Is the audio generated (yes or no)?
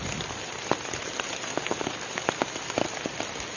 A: no